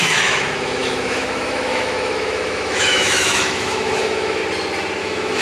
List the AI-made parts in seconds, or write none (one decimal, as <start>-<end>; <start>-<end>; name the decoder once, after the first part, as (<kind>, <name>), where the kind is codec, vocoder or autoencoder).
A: 0.0-4.4 (autoencoder, DAC-VAE); 5.0-5.4